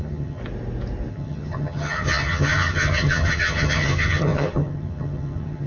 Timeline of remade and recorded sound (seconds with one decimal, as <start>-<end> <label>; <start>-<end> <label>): 0.0-0.4 remade; 0.4-1.1 recorded; 1.1-5.7 remade